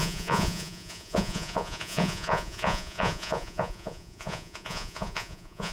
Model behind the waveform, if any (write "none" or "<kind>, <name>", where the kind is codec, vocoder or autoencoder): vocoder, Vocos